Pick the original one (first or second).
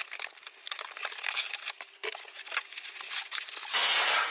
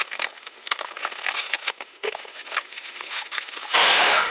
first